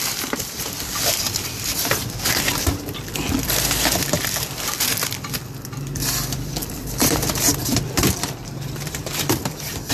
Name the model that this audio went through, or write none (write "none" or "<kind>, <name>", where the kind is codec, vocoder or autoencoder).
vocoder, BigVGAN v2